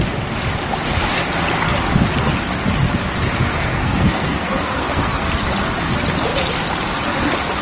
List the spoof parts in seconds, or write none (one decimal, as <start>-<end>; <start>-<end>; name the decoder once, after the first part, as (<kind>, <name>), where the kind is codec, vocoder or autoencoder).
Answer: 3.5-5.3 (codec, SNAC)